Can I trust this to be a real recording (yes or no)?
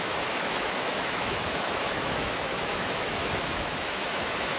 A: no